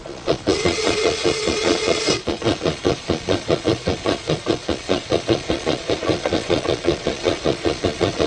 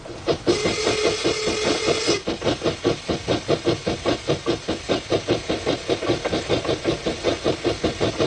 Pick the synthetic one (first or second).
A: first